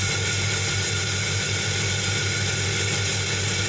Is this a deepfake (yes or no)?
no